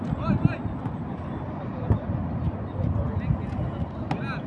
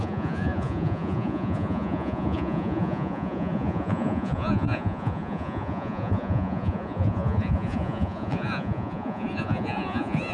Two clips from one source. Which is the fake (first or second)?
second